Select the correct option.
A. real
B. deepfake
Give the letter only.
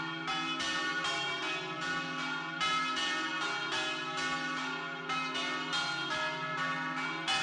A